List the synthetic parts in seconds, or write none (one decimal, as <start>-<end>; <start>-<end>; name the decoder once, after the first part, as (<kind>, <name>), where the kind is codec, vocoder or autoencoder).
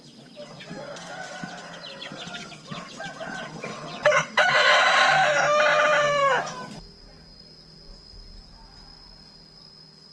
3.7-4.8 (vocoder, WaveNeXt)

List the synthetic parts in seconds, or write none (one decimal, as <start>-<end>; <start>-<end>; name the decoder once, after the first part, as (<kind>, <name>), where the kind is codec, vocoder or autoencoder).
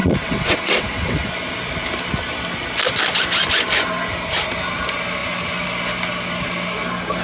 0.0-1.3 (vocoder, WaveNeXt)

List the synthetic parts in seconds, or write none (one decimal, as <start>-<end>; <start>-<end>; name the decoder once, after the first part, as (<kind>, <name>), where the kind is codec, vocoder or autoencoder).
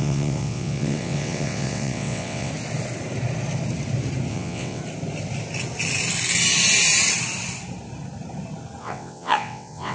0.0-2.5 (vocoder, WaveNeXt); 4.3-4.8; 8.8-9.9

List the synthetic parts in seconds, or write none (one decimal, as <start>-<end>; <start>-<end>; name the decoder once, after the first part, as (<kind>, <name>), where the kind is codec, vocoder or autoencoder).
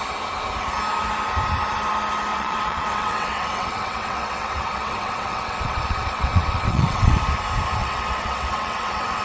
2.3-7.2 (vocoder, WaveNeXt); 7.8-9.2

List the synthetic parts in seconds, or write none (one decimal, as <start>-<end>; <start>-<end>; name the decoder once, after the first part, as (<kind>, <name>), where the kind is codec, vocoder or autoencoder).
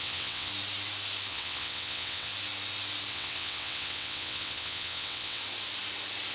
0.0-0.5 (vocoder, WaveNeXt); 1.3-2.3; 3.1-5.4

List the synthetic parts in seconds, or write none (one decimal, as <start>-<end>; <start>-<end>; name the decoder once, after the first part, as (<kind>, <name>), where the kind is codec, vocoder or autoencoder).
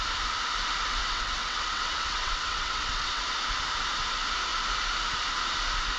1.0-3.2 (vocoder, WaveNeXt)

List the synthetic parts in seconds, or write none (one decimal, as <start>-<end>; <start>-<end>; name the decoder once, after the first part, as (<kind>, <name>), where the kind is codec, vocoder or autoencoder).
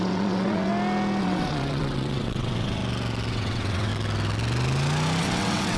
0.0-0.7 (vocoder, WaveNeXt); 1.2-2.8; 3.3-3.9; 5.2-5.8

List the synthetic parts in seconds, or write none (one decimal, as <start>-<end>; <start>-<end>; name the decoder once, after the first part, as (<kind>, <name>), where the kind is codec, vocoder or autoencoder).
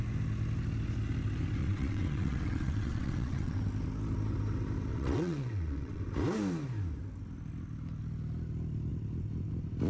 1.6-3.6 (vocoder, WaveNeXt); 4.9-6.0